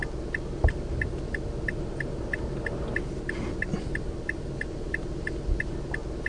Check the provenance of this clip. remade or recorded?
recorded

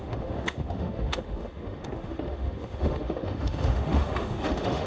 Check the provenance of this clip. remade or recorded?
remade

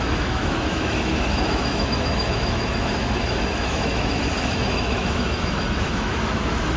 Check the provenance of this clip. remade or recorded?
remade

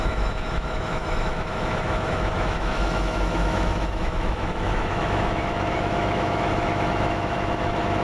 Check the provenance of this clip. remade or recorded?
remade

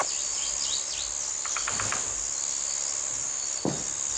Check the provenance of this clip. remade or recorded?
recorded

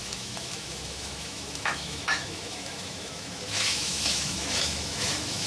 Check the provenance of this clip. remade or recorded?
remade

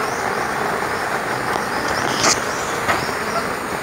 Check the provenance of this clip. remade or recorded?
recorded